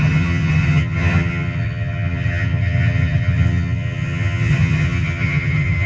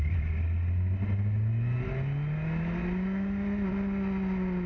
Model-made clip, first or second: first